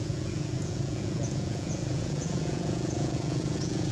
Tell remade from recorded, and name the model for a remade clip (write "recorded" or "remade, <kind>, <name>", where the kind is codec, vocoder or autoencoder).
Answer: remade, vocoder, Vocos